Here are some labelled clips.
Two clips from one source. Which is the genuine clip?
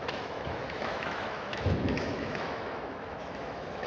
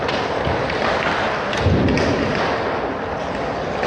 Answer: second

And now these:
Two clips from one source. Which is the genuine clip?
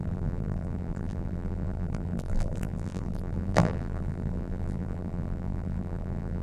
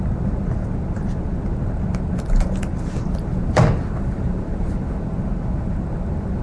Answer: second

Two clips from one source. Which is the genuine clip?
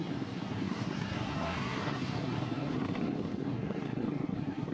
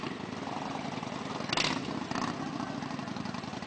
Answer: second